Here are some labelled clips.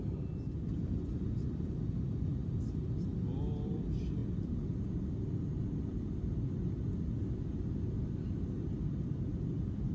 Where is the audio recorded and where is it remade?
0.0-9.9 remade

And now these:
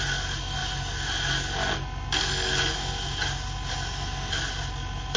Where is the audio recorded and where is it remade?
0.0-5.2 recorded